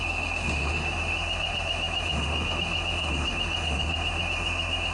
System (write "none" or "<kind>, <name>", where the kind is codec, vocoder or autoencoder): autoencoder, DAC-VAE